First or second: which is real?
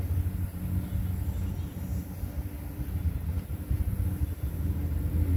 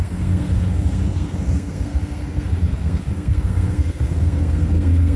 first